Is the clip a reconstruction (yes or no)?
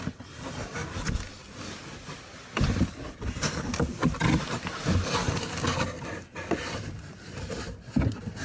no